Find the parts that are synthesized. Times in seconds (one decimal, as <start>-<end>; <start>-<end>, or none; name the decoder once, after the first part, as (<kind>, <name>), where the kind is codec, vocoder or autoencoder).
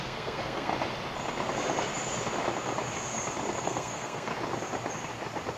0.0-0.7 (codec, SNAC); 3.6-4.3